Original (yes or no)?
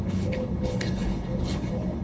no